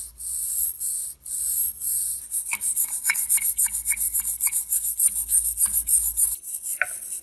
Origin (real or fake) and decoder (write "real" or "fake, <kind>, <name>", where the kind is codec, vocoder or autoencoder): real